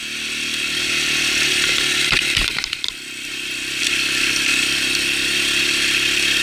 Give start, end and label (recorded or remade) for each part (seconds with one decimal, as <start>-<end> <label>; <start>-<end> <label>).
0.0-3.8 recorded; 3.8-4.5 remade; 4.5-5.6 recorded; 5.6-6.4 remade